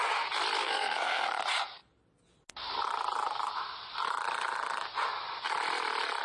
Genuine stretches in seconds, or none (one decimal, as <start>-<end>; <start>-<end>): 0.0-0.6; 1.3-6.2